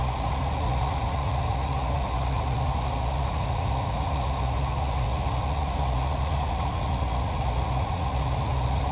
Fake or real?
fake